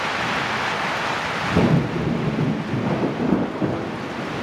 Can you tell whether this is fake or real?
fake